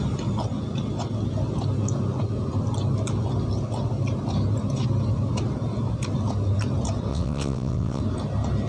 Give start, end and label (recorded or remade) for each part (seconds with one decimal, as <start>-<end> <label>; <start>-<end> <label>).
0.0-7.1 recorded; 7.1-8.0 remade; 8.0-8.7 recorded